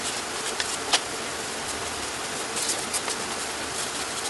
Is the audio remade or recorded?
recorded